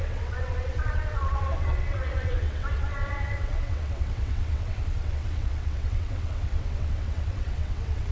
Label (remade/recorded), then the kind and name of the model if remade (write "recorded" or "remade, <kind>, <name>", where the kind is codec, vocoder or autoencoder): remade, vocoder, WaveNeXt